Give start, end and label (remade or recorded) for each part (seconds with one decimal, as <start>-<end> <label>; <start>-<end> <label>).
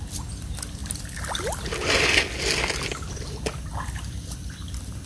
0.0-5.1 recorded